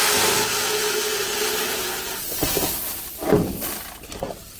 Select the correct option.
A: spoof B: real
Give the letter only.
B